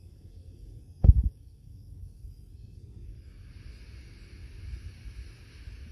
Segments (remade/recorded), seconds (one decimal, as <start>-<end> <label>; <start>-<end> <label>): 0.0-3.1 remade; 3.1-5.9 recorded